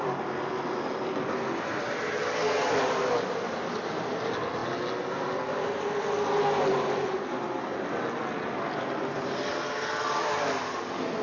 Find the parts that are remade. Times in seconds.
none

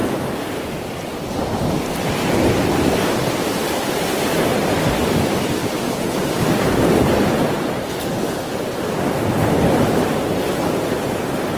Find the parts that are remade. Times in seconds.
none